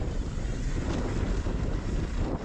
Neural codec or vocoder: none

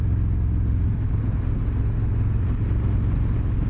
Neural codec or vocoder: none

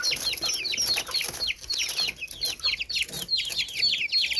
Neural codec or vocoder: none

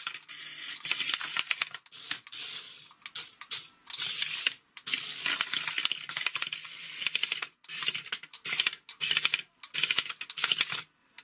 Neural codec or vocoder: none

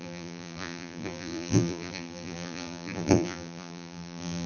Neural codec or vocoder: vocoder, BigVGAN v2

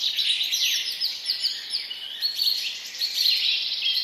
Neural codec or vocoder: vocoder, BigVGAN v2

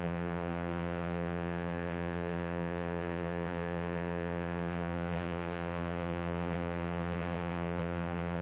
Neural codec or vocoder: vocoder, BigVGAN v2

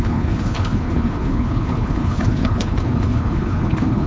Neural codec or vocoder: codec, HILCodec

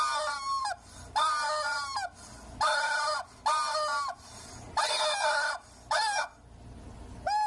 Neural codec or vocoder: none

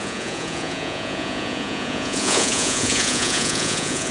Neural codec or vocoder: vocoder, Vocos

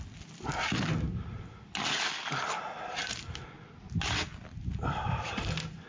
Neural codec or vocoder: none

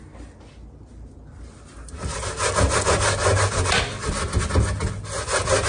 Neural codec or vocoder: none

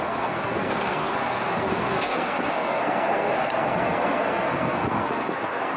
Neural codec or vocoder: codec, SNAC